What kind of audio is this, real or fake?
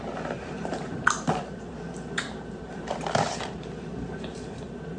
fake